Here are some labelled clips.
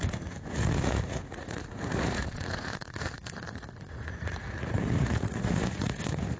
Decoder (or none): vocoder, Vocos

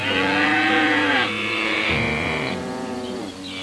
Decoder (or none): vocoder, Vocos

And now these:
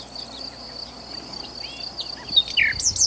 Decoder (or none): none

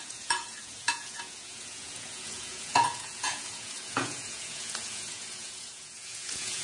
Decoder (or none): vocoder, Vocos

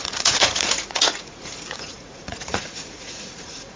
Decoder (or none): vocoder, Vocos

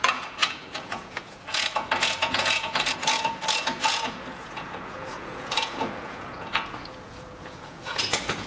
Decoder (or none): vocoder, Vocos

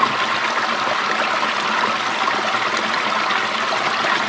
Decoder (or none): none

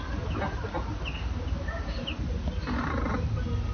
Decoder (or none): none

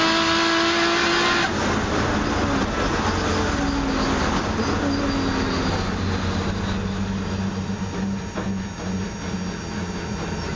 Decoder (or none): none